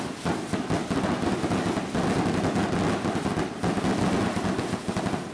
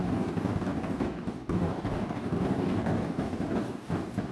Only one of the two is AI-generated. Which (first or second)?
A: second